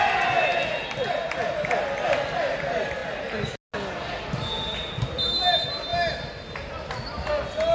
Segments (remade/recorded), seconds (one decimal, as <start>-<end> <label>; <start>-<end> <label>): 0.0-0.5 recorded; 0.5-1.5 remade; 1.5-7.7 recorded